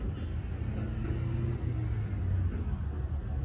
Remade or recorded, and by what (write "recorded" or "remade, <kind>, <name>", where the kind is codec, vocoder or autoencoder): recorded